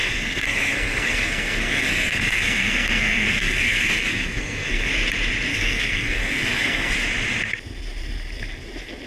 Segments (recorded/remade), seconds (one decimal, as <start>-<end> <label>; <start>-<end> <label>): 0.0-4.9 remade; 4.9-5.5 recorded; 5.5-6.9 remade; 6.9-9.1 recorded